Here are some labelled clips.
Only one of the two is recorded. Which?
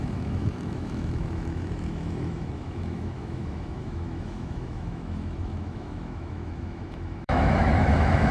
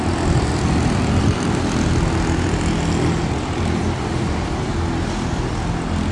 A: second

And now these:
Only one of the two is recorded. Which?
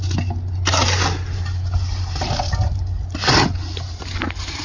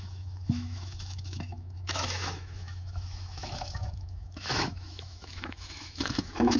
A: first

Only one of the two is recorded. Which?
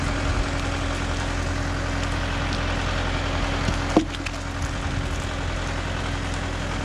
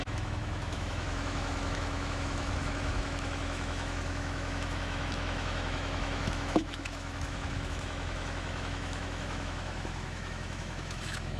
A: first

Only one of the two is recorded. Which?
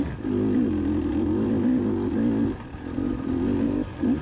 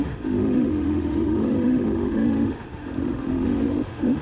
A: first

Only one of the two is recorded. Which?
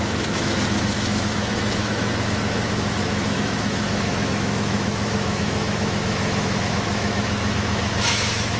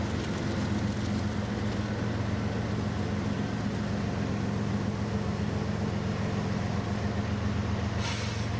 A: second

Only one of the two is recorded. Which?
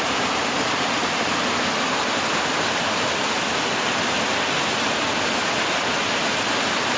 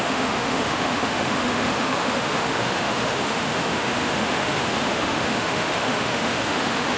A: first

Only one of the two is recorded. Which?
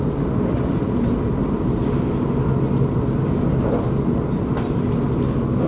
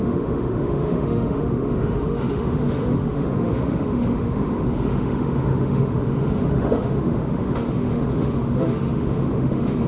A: first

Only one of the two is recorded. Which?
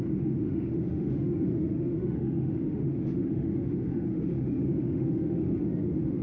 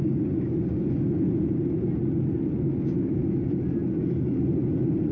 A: second